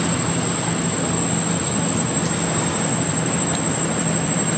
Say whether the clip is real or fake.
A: real